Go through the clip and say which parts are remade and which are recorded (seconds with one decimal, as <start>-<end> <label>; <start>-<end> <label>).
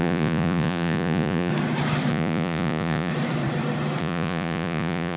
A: 0.0-1.5 remade; 1.5-2.1 recorded; 2.1-3.1 remade; 3.1-4.0 recorded; 4.0-5.2 remade